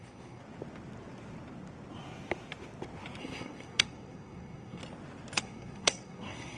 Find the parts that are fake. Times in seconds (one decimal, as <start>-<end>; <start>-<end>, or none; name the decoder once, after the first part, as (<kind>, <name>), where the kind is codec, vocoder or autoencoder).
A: 0.0-0.4 (codec, SNAC); 3.2-4.8; 5.4-6.6